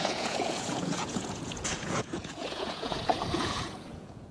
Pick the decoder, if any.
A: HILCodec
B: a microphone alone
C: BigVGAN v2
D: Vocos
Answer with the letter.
D